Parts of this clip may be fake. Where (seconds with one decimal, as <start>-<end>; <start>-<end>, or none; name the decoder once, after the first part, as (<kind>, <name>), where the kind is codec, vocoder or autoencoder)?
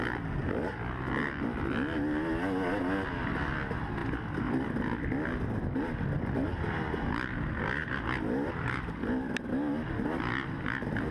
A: none